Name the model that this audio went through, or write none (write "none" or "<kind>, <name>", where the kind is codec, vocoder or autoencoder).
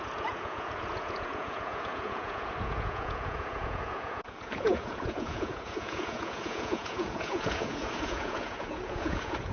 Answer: vocoder, Vocos